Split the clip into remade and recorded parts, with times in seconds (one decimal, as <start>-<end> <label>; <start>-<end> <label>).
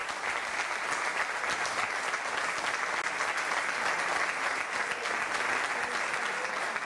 0.0-6.9 recorded